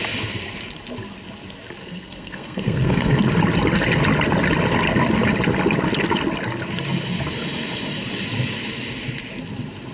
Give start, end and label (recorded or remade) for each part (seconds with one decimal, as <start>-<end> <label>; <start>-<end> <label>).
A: 0.0-1.8 recorded; 1.8-3.2 remade; 3.2-9.9 recorded

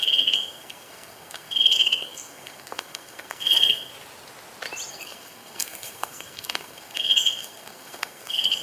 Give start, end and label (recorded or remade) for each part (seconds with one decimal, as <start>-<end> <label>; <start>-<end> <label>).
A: 0.0-3.9 remade; 3.9-4.9 recorded; 4.9-8.6 remade

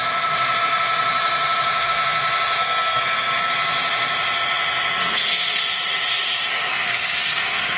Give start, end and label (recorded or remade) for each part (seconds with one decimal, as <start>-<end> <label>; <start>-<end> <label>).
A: 0.0-2.6 recorded; 2.6-3.5 remade; 3.5-5.0 recorded; 5.0-5.6 remade; 5.6-6.7 recorded; 6.7-7.8 remade

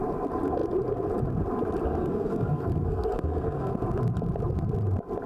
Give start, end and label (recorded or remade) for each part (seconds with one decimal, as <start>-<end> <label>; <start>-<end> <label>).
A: 0.0-2.0 recorded; 2.0-3.7 remade; 3.7-5.3 recorded

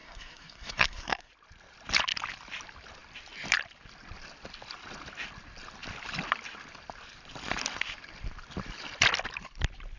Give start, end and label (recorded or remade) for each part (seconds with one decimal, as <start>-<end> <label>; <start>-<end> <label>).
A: 0.0-1.3 remade; 1.3-10.0 recorded

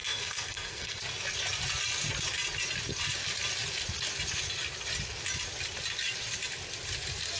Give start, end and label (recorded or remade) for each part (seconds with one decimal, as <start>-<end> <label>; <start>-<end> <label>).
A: 0.0-1.0 remade; 1.0-7.4 recorded

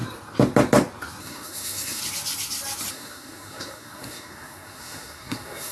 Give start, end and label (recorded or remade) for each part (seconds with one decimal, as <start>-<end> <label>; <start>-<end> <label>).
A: 0.0-1.2 recorded; 1.2-2.0 remade; 2.0-2.9 recorded; 2.9-5.7 remade